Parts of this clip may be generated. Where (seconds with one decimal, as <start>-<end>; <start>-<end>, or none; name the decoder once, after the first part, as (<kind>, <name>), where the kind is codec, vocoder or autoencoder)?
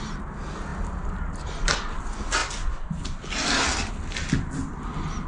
none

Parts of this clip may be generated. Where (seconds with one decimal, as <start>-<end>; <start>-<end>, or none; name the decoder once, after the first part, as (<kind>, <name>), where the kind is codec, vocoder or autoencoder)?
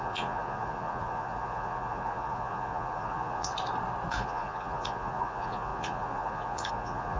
0.0-3.5 (vocoder, Vocos); 4.1-7.2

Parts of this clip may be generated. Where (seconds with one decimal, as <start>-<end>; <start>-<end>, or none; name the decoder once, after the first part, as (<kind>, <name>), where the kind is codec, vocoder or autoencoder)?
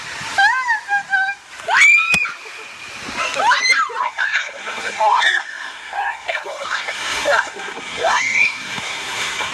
4.0-9.5 (codec, SNAC)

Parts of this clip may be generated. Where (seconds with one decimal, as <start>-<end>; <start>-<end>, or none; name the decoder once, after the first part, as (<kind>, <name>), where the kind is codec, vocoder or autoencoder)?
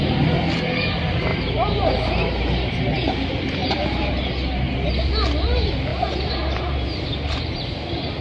1.3-2.7 (vocoder, BigVGAN v2); 3.6-4.1; 5.9-8.2